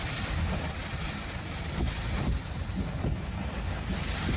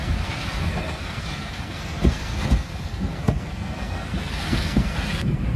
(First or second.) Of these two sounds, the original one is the first